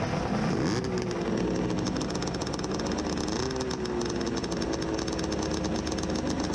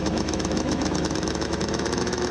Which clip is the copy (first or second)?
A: second